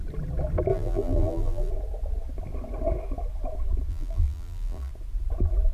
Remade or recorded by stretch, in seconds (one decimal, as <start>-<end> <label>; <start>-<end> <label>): 0.0-0.7 recorded; 0.7-1.7 remade; 1.7-3.9 recorded; 3.9-4.9 remade; 4.9-5.7 recorded